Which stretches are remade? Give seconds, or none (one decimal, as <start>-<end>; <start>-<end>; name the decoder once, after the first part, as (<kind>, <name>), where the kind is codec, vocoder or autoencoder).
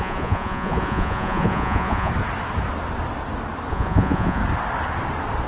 0.0-2.1 (vocoder, Vocos); 3.7-4.4